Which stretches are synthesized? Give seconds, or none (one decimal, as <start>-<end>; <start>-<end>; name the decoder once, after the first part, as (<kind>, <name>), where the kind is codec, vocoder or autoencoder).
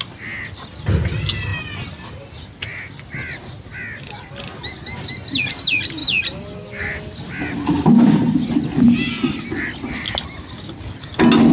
none